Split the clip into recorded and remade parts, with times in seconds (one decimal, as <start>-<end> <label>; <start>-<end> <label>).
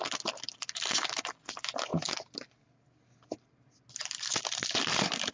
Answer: 0.0-5.3 recorded